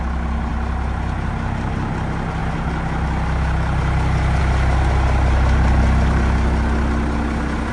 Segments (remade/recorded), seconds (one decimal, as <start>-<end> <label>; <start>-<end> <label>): 0.0-7.7 recorded